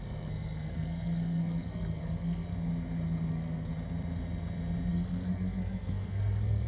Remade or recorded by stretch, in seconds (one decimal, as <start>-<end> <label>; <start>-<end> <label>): 0.0-2.5 remade; 2.5-3.3 recorded; 3.3-3.7 remade; 3.7-4.9 recorded; 4.9-6.7 remade